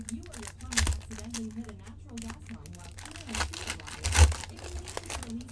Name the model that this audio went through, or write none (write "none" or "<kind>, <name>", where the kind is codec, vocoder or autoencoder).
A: none